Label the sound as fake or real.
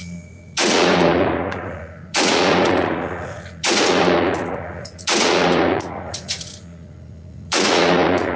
fake